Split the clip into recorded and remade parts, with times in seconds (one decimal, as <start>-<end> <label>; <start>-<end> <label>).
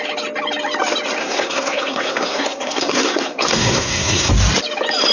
0.0-1.2 recorded; 1.2-4.3 remade; 4.3-5.1 recorded